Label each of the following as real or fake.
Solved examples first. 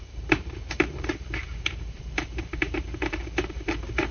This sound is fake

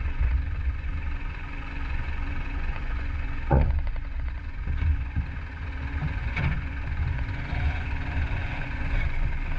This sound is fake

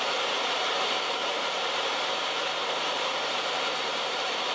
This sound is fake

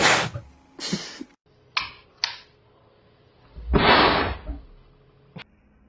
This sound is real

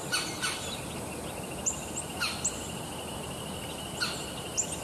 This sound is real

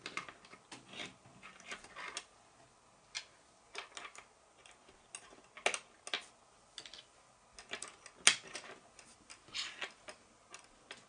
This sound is real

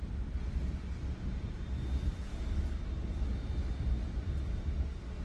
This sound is real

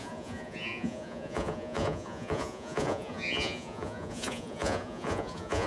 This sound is fake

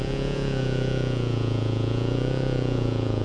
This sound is fake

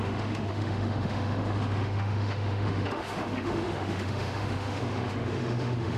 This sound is fake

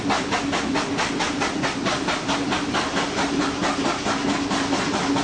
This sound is real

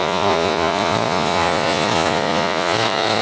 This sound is fake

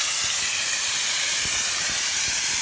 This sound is real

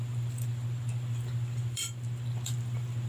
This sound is fake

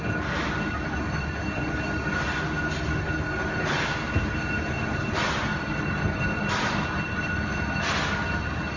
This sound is real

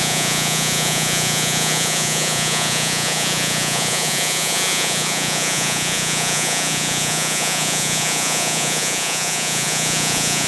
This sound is fake